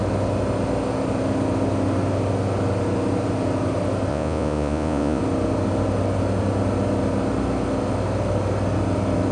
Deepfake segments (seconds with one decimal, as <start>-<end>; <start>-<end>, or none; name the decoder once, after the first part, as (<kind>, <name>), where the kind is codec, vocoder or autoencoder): 4.1-5.2 (vocoder, Vocos)